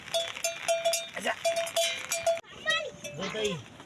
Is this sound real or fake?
real